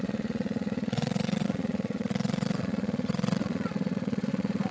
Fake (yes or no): yes